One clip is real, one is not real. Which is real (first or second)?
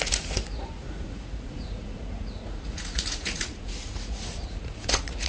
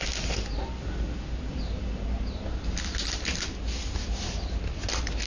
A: second